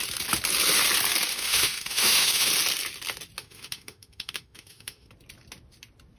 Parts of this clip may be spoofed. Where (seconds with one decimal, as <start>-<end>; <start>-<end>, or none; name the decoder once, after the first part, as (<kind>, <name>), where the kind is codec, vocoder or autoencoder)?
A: 1.3-2.5 (autoencoder, DAC-VAE); 3.4-5.1